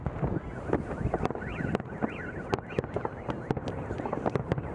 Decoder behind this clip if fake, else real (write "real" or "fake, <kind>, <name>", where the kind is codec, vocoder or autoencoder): real